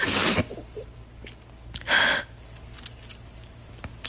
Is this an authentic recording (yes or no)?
yes